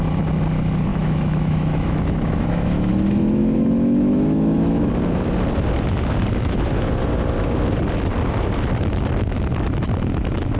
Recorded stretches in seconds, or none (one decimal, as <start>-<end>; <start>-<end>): 0.0-0.9; 2.9-3.4; 4.9-10.6